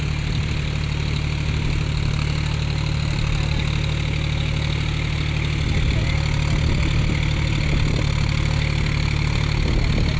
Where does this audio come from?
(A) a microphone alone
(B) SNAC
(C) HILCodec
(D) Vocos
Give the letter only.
A